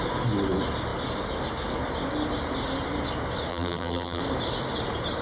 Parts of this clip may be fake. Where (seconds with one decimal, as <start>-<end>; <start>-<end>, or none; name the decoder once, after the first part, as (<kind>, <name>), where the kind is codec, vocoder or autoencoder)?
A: 3.5-4.2 (vocoder, BigVGAN v2)